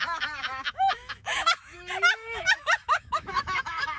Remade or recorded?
remade